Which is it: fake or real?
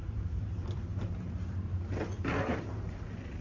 fake